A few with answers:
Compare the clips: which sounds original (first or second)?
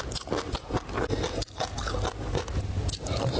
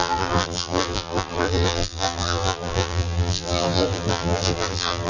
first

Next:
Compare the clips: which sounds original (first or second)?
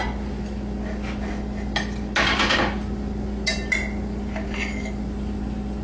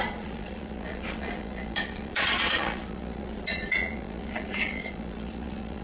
first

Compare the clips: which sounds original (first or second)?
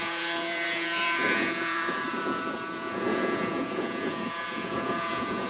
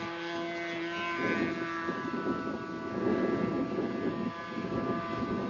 second